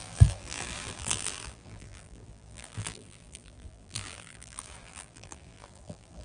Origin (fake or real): fake